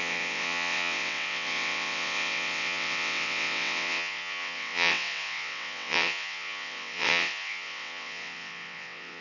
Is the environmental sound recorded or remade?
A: remade